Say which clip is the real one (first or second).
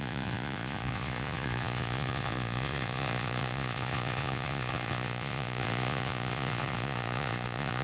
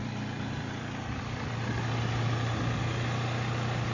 second